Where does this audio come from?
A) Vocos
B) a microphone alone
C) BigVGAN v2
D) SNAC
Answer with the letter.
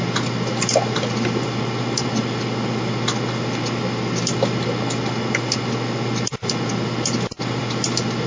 B